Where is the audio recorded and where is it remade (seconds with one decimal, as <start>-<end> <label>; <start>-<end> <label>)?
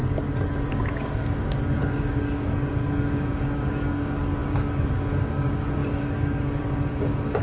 0.0-0.7 recorded; 0.7-7.4 remade